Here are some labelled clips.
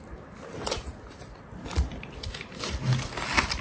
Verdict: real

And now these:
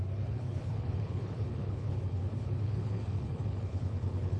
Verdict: fake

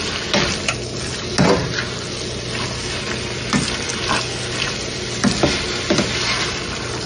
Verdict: real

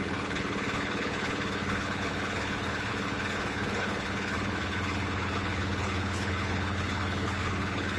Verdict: fake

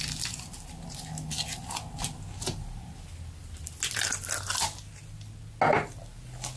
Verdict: real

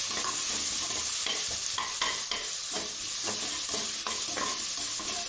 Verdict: real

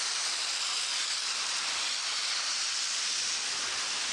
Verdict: real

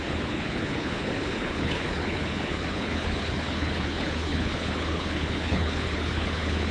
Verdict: fake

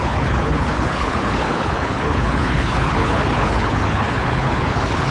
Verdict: fake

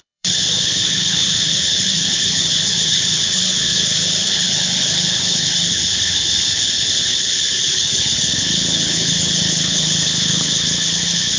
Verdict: fake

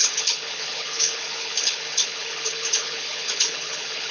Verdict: fake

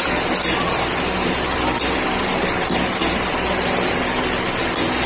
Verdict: real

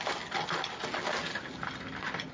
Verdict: real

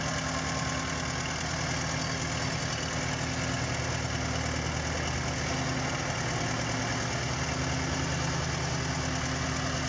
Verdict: real